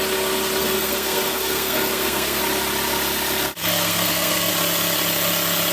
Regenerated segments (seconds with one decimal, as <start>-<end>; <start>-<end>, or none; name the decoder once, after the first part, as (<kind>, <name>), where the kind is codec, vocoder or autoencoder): 0.6-2.4 (codec, SNAC); 3.6-4.5

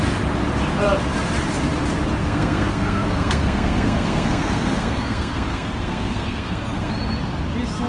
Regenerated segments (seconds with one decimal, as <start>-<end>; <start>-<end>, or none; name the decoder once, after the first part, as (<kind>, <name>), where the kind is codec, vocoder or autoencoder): 2.2-6.9 (codec, SNAC)

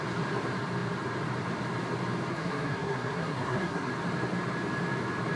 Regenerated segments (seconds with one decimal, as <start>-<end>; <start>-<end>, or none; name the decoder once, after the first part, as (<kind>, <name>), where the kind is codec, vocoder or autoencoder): 2.3-3.9 (codec, SNAC)